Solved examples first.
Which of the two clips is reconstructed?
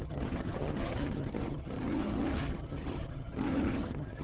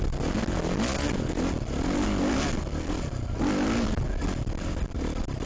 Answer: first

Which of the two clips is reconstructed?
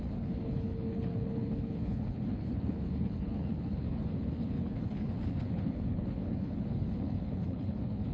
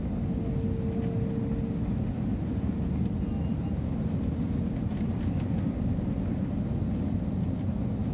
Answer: first